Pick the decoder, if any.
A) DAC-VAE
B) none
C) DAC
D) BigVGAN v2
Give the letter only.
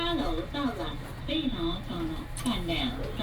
B